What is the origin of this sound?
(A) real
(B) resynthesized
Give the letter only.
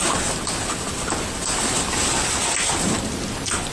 A